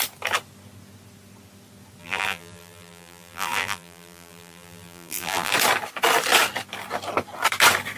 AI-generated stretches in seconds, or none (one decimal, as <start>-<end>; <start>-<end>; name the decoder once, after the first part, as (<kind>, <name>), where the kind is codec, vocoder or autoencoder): 2.0-5.5 (vocoder, BigVGAN v2)